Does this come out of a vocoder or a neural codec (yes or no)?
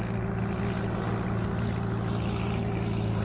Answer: no